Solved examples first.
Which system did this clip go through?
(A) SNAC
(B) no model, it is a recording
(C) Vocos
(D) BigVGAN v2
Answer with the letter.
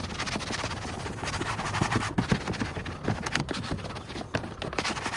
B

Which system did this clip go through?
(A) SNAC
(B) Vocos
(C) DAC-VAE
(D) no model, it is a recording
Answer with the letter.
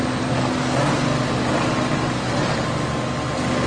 D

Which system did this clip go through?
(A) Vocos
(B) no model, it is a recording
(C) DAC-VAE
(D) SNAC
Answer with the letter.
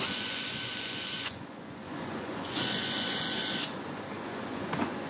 A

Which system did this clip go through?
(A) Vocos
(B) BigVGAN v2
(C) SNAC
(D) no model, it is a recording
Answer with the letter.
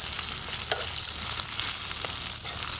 D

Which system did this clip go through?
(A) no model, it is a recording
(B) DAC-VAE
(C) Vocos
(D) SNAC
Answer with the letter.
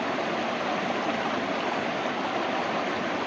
A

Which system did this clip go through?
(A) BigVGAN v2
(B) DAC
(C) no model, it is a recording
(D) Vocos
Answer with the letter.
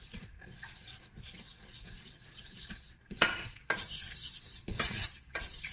D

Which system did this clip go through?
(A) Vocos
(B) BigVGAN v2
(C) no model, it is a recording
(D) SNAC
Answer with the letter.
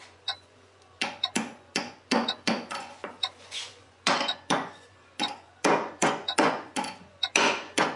A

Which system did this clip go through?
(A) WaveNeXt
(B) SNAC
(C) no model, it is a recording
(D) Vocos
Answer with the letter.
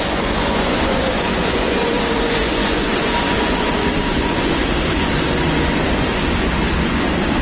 D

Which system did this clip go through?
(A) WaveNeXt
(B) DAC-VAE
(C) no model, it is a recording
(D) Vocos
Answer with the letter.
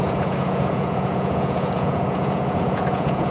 D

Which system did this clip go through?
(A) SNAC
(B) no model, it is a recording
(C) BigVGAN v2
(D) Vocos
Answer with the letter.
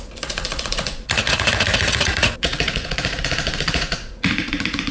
D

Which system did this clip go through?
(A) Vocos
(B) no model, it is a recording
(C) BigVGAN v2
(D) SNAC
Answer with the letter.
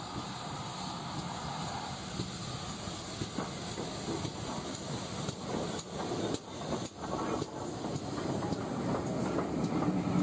B